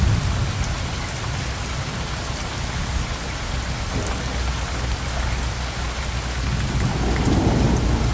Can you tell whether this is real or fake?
real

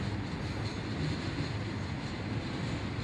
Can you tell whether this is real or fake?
real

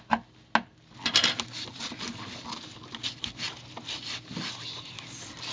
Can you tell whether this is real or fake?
real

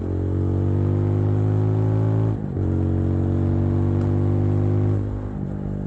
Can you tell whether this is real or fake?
real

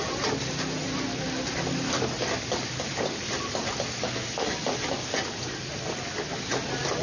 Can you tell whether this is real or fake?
real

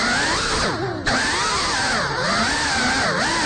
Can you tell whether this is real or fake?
real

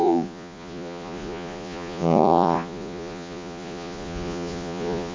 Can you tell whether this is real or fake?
fake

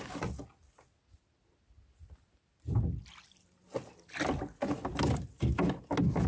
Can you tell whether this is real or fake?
real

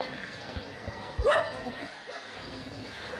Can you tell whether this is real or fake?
fake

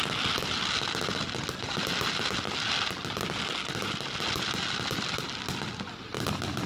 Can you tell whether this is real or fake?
real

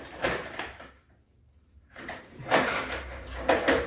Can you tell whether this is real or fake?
fake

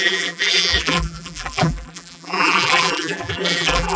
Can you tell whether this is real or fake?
fake